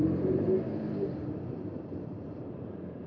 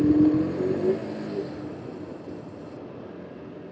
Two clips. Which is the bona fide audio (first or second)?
second